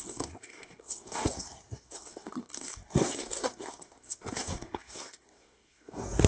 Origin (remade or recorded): remade